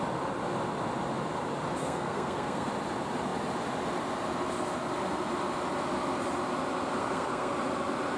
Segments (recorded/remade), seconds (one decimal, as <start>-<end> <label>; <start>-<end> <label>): 0.0-1.8 recorded; 1.8-2.7 remade; 2.7-7.0 recorded; 7.0-7.5 remade; 7.5-8.2 recorded